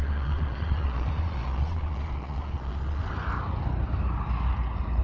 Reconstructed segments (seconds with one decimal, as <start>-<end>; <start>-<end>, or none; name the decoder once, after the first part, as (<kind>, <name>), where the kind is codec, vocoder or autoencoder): 0.0-3.0 (vocoder, Vocos)